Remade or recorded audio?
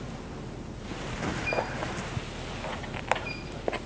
recorded